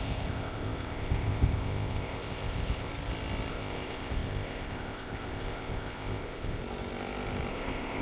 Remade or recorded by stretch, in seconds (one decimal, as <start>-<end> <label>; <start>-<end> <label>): 0.0-2.9 remade; 2.9-3.5 recorded; 3.5-6.6 remade; 6.6-7.5 recorded; 7.5-8.0 remade